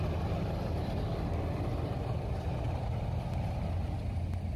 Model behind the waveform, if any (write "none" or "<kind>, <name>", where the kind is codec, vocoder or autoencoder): none